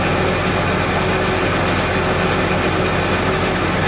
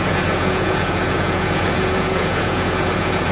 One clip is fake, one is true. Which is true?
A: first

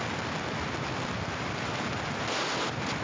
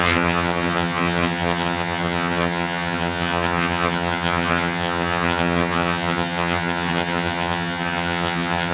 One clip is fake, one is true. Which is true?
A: first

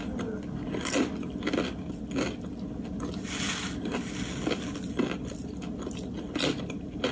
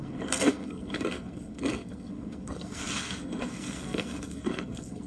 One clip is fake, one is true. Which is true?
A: first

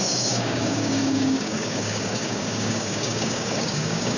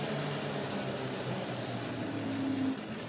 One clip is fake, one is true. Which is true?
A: second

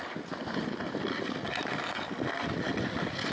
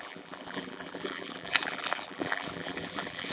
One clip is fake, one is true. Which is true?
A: first